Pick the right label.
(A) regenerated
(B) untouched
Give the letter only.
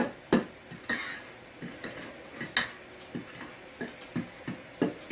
B